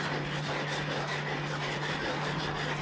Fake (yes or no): no